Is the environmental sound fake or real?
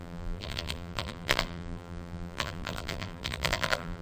fake